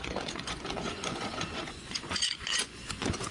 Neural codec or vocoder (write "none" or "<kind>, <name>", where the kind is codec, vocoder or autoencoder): vocoder, Vocos